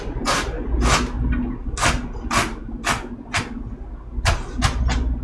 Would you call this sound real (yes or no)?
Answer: yes